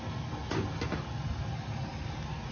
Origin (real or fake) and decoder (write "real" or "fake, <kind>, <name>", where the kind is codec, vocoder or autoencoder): real